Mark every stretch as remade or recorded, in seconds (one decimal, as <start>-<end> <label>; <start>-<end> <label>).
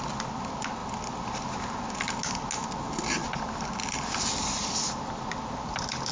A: 0.0-6.1 recorded